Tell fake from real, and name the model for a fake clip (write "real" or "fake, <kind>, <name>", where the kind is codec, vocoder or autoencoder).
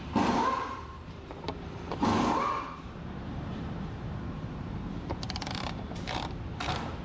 fake, vocoder, BigVGAN v2